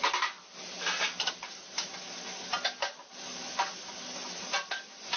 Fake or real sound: real